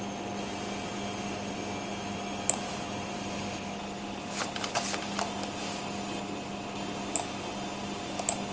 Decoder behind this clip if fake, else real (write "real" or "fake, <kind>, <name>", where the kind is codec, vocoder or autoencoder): real